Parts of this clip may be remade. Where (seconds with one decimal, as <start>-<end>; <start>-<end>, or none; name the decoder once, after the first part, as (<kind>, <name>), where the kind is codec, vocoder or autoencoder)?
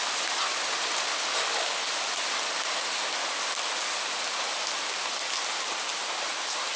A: none